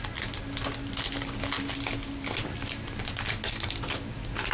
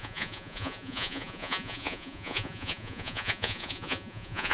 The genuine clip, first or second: first